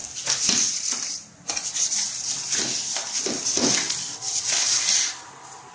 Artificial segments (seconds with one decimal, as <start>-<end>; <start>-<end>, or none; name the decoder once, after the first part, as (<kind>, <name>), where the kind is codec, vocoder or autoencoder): none